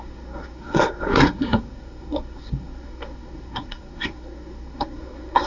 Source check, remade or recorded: remade